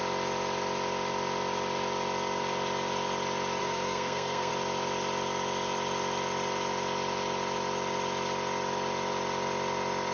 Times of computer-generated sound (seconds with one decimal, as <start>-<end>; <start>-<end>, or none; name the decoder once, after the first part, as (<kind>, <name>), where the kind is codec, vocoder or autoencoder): 3.6-4.5 (codec, SNAC)